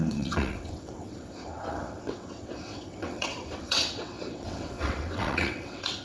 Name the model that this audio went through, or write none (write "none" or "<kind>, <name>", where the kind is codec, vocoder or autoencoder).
vocoder, WaveNeXt